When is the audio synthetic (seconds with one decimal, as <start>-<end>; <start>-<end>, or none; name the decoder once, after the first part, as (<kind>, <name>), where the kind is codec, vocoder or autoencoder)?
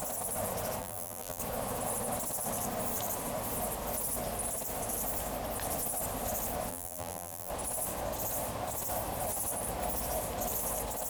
0.8-1.4 (vocoder, BigVGAN v2); 6.7-7.5